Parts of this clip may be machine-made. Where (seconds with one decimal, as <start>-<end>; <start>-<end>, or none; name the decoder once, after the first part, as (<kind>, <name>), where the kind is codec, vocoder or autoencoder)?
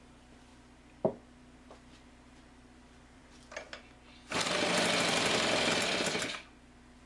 0.0-0.5 (vocoder, BigVGAN v2); 1.4-3.2; 5.0-7.1